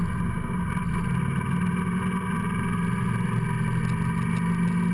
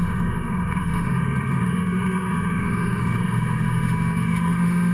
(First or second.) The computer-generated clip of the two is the second